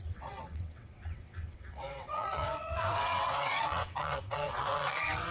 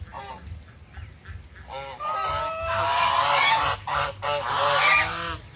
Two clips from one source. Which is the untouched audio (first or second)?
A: second